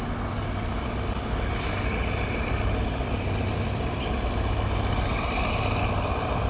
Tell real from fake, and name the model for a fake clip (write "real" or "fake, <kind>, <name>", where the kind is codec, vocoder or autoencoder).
real